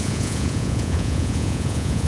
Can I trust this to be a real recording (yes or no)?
no